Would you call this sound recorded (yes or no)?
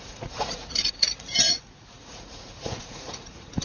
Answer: no